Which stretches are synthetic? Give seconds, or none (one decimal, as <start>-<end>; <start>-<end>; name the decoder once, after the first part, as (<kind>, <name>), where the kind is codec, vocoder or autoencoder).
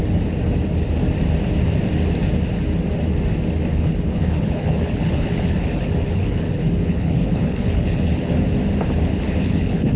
3.7-8.3 (codec, HILCodec); 9.1-10.0